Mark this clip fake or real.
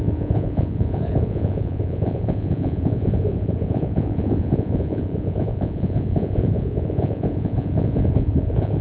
fake